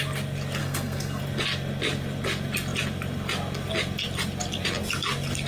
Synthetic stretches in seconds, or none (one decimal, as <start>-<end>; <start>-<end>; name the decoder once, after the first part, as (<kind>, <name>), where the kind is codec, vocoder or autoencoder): 0.6-1.2 (codec, SNAC)